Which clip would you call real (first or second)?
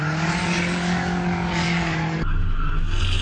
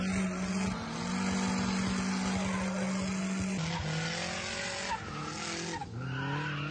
second